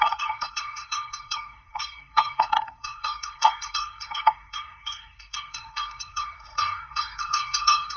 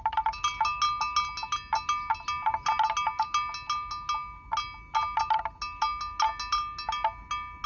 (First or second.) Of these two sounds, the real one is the second